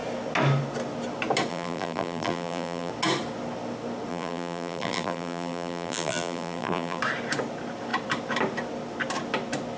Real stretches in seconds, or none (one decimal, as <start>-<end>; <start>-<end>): 0.0-1.5; 2.9-4.1; 7.0-9.8